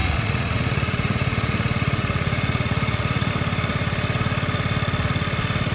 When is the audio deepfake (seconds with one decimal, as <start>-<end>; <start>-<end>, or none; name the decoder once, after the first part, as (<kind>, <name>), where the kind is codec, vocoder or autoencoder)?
0.0-3.3 (vocoder, Vocos)